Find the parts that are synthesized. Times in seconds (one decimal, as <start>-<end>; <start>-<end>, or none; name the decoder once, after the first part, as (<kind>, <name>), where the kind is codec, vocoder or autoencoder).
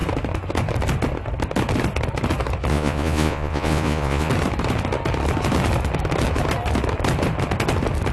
2.7-4.3 (vocoder, Vocos)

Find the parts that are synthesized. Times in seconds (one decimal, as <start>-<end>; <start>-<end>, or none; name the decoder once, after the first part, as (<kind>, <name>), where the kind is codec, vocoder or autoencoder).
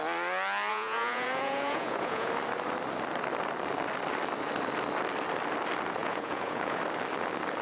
0.7-2.3 (vocoder, Vocos); 6.0-6.8